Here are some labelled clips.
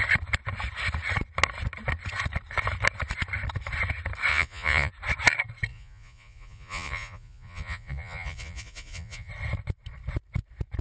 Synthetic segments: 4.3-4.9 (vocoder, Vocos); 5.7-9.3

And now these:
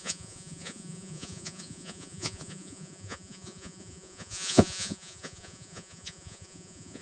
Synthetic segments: 0.0-7.0 (vocoder, Vocos)

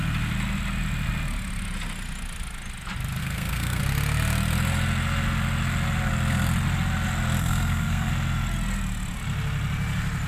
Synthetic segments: 3.2-3.8 (codec, SNAC); 7.4-8.1

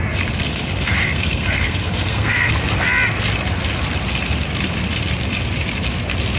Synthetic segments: 0.5-2.5 (codec, SNAC)

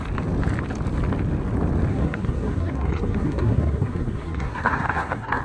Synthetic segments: 1.9-5.4 (codec, SNAC)

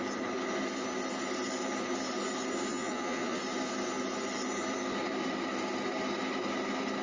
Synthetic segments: 2.7-3.4 (vocoder, Vocos)